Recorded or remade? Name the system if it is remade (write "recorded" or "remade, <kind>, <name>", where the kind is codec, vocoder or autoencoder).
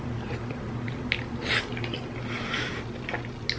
recorded